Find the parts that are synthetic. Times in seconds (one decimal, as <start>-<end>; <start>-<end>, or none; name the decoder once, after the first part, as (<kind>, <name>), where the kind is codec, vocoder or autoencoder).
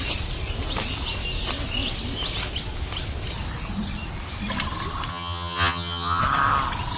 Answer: 5.1-6.2 (vocoder, HiFi-GAN)